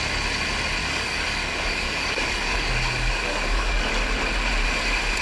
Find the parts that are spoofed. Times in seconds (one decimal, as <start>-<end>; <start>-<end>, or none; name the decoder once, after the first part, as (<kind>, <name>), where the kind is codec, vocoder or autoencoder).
0.8-3.9 (codec, DAC)